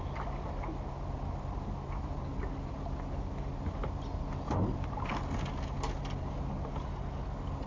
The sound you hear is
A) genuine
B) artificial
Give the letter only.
A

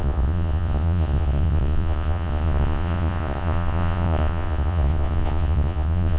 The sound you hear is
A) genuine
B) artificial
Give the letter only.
B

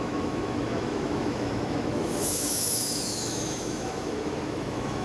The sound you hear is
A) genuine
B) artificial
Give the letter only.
B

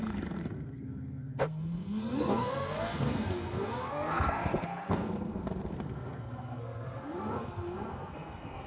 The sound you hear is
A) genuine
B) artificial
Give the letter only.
B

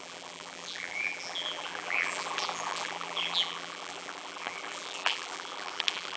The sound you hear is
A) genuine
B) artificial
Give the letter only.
B